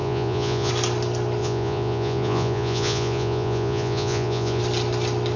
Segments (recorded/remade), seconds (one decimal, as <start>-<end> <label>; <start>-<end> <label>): 0.0-0.7 remade; 0.7-1.4 recorded; 1.4-4.6 remade; 4.6-5.4 recorded